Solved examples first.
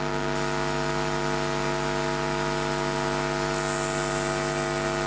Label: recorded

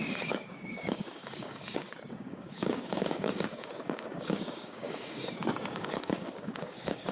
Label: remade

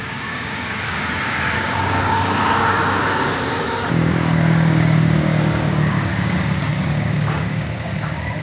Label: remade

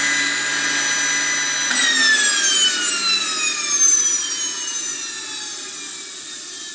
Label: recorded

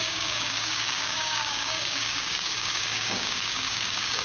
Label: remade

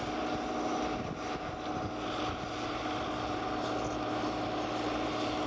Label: recorded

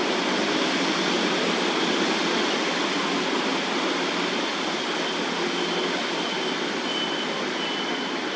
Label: recorded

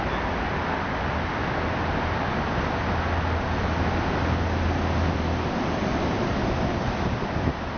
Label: recorded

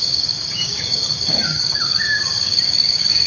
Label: remade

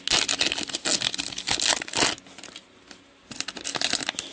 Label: recorded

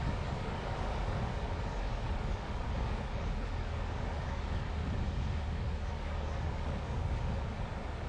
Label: remade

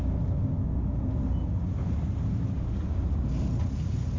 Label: recorded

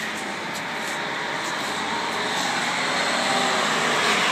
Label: recorded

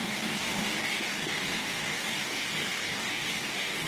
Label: remade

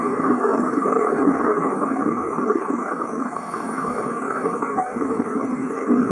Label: remade